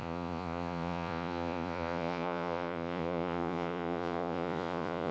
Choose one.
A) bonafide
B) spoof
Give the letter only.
B